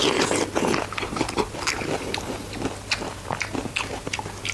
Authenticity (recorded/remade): recorded